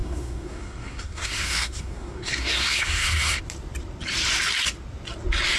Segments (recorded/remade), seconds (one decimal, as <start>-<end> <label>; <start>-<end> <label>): 0.0-3.4 remade; 3.4-5.6 recorded